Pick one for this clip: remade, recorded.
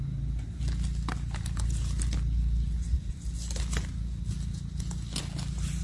recorded